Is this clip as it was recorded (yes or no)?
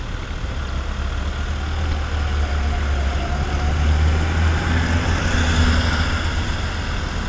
yes